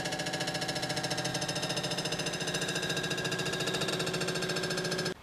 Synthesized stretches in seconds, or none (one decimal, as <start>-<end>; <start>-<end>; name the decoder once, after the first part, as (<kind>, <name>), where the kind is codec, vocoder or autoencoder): 1.3-3.9 (vocoder, BigVGAN v2)